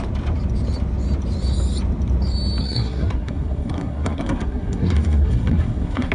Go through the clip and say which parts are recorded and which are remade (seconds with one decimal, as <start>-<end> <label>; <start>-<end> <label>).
0.0-2.6 recorded; 2.6-6.1 remade